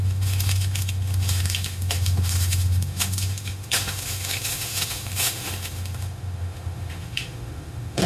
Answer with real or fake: fake